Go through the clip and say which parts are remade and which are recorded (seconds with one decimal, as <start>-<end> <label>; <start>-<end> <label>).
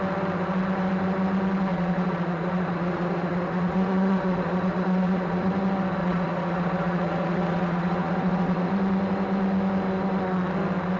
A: 0.0-1.7 recorded; 1.7-5.5 remade; 5.5-6.0 recorded; 6.0-8.7 remade; 8.7-11.0 recorded